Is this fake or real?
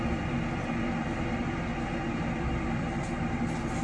real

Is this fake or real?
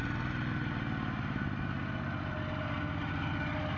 real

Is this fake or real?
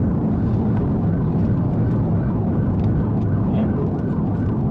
real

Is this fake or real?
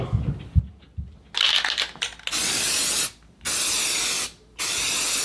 real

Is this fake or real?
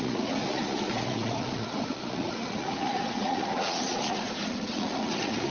fake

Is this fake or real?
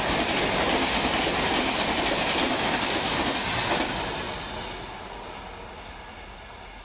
real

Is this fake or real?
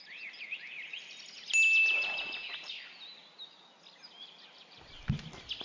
real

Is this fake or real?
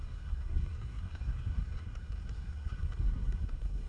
fake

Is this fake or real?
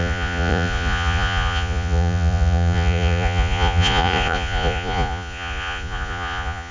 fake